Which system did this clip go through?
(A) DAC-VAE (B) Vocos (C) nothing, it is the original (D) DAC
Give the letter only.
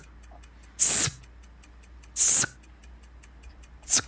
C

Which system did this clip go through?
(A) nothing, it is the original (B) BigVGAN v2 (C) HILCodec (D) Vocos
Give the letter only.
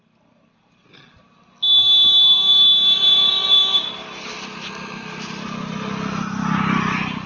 A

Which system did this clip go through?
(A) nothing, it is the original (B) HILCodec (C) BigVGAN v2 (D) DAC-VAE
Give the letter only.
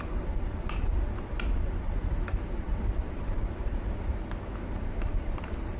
A